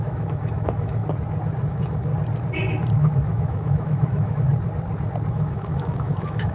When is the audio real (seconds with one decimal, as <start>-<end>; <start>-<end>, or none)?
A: 1.0-1.7; 2.1-2.9; 4.5-5.3